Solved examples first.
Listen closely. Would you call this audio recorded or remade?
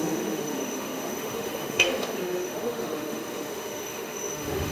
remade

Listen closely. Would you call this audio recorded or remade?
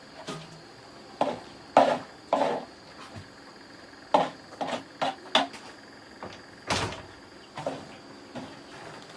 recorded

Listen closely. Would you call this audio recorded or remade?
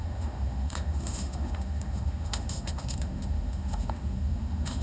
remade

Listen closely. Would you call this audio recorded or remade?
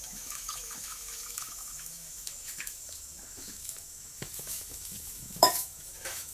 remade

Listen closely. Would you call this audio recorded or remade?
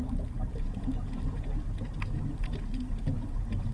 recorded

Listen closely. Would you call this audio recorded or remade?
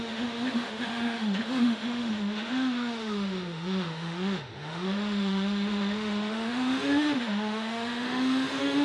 remade